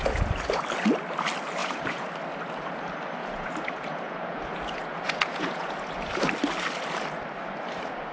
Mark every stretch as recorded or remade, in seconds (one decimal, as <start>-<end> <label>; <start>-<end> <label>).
0.0-0.6 remade; 0.6-1.6 recorded; 1.6-2.1 remade; 2.1-3.2 recorded; 3.2-6.1 remade; 6.1-8.1 recorded